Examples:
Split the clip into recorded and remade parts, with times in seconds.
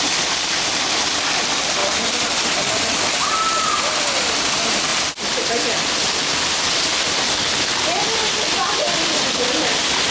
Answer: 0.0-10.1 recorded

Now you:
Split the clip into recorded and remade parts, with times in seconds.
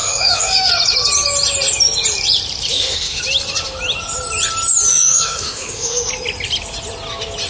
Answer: 0.0-0.7 remade; 0.7-2.7 recorded; 2.7-3.2 remade; 3.2-4.9 recorded; 4.9-6.1 remade; 6.1-7.5 recorded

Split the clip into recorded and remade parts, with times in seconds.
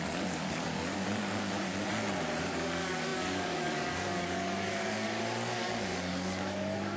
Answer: 0.0-1.7 remade; 1.7-2.4 recorded; 2.4-7.0 remade